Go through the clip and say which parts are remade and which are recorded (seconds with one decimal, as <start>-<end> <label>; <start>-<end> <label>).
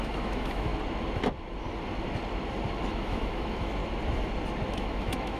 0.0-0.7 remade; 0.7-2.9 recorded; 2.9-3.8 remade; 3.8-4.7 recorded; 4.7-5.4 remade